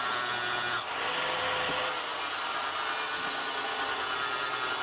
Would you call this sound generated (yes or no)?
no